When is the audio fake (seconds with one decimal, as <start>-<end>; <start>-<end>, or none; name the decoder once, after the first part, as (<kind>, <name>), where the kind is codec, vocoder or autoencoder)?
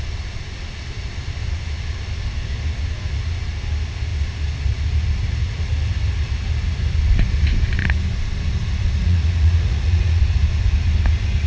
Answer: 9.0-10.2 (vocoder, Vocos)